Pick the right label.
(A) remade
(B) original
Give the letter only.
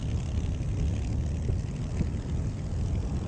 B